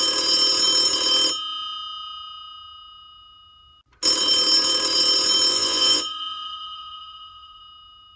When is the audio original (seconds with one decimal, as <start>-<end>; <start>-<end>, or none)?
0.0-5.5; 7.6-8.2